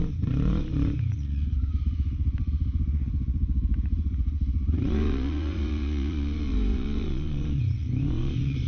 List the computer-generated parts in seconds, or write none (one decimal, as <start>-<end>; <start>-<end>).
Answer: 0.0-8.7